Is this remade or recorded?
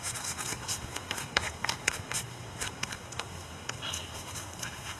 remade